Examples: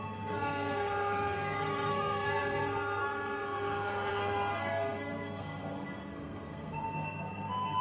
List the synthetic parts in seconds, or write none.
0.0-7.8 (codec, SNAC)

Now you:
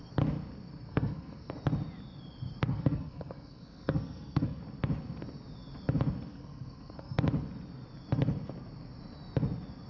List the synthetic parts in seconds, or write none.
0.9-1.5 (codec, SNAC); 2.7-4.6; 6.3-7.2

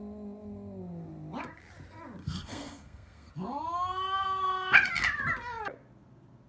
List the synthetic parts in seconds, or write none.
2.2-3.3 (codec, SNAC)